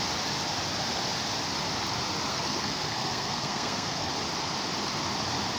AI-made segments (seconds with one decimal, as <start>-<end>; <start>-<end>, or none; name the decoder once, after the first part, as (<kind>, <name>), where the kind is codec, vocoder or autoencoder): 2.3-4.1 (codec, SNAC)